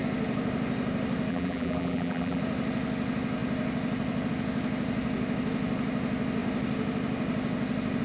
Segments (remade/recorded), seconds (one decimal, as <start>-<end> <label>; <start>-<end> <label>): 0.0-1.3 recorded; 1.3-2.4 remade; 2.4-8.0 recorded